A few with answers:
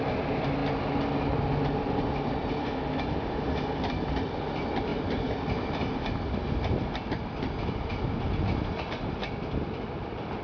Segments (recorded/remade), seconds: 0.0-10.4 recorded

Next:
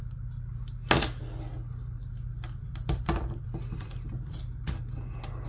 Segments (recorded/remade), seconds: 0.0-2.6 recorded; 2.6-4.4 remade; 4.4-5.5 recorded

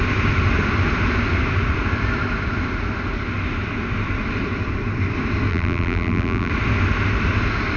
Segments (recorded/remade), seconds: 0.0-5.5 recorded; 5.5-6.5 remade; 6.5-7.8 recorded

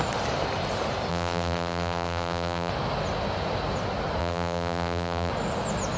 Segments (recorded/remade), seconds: 0.0-1.1 recorded; 1.1-2.7 remade; 2.7-4.2 recorded; 4.2-5.3 remade; 5.3-6.0 recorded